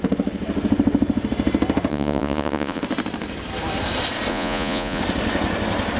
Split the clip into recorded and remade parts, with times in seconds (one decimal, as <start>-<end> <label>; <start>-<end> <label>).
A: 0.0-1.9 recorded; 1.9-2.8 remade; 2.8-4.3 recorded; 4.3-5.0 remade; 5.0-6.0 recorded